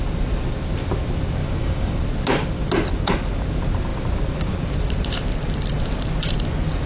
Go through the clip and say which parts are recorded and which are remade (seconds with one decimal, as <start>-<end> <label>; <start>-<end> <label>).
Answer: 0.0-1.4 recorded; 1.4-2.0 remade; 2.0-6.9 recorded